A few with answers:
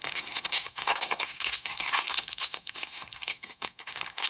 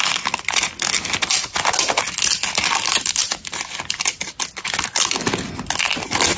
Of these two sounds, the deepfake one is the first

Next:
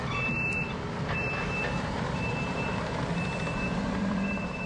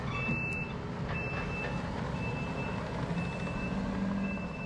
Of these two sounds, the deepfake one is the first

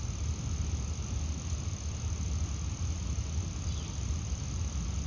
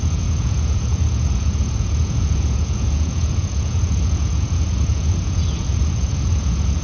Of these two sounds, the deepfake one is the second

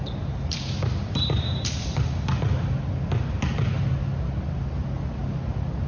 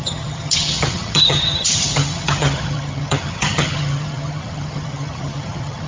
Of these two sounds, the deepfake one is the second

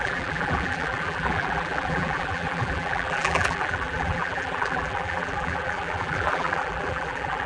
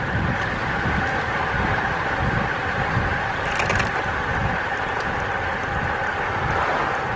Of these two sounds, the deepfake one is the first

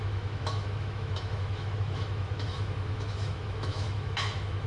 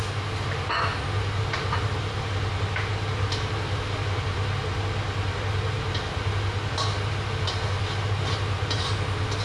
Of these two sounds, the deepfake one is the first